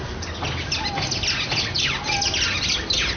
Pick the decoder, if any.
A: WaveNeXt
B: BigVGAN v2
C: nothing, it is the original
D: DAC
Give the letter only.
C